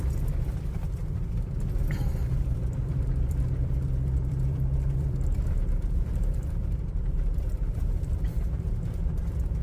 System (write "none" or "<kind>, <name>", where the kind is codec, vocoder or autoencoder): vocoder, BigVGAN v2